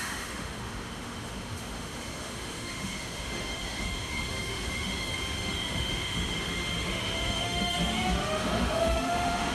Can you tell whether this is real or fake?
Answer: fake